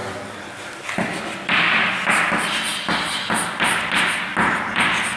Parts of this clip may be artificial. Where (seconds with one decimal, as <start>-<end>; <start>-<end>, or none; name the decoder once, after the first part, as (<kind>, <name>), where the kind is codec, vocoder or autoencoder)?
none